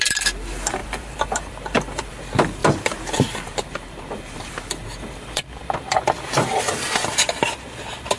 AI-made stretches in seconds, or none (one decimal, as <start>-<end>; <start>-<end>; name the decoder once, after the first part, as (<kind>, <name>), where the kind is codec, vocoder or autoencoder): 0.8-2.1 (vocoder, BigVGAN v2); 2.6-6.6